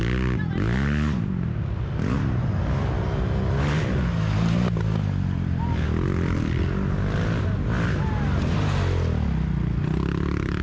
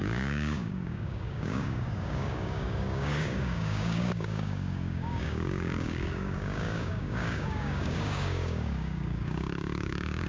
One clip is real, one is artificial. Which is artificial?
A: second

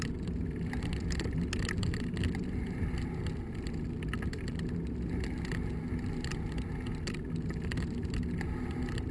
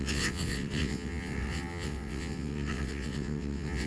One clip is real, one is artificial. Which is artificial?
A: second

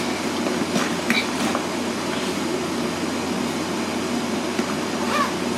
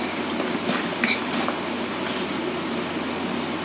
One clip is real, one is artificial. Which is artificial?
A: second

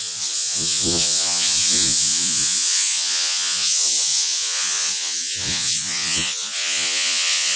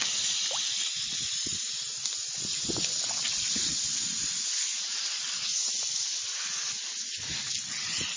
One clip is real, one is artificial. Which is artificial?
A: first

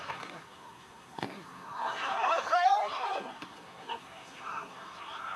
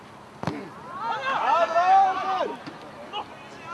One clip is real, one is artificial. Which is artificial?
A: first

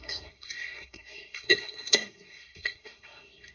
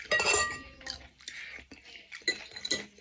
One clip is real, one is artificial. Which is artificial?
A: first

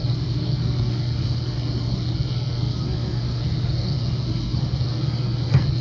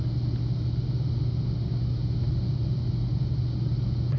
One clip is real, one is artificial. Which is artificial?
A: first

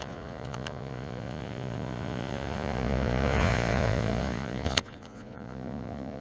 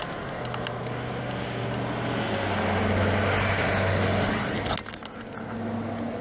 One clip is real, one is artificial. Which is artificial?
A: first